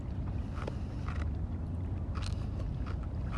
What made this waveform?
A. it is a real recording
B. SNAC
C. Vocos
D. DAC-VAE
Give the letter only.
A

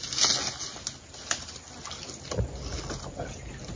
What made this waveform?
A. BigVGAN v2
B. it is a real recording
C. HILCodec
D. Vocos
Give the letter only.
B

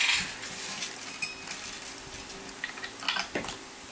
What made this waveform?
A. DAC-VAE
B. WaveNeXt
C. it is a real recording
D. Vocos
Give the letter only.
C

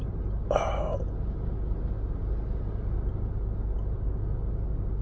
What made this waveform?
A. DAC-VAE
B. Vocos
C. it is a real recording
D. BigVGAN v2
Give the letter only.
C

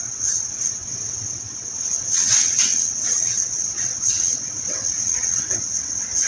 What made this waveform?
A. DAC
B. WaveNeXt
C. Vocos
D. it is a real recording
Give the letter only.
B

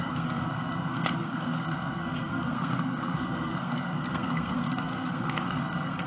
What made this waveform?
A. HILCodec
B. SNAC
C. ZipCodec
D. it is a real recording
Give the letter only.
B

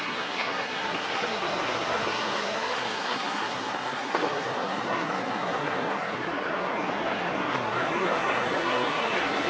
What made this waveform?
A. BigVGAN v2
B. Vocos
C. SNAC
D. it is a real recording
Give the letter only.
C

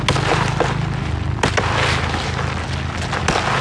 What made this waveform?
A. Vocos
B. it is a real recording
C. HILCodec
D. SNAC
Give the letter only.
B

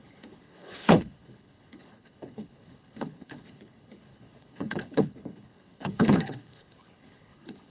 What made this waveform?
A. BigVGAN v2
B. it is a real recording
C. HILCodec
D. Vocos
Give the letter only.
C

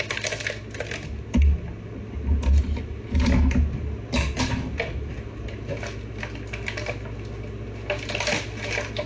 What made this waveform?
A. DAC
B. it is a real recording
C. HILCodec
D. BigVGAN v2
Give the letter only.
B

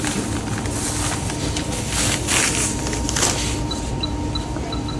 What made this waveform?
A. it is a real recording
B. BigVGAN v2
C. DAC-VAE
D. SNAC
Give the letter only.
A